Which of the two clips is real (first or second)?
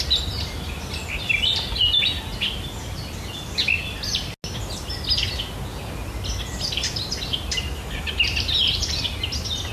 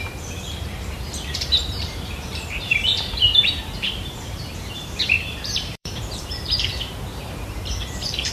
first